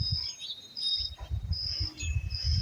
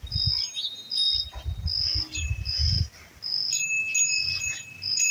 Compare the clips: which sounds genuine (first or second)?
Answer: second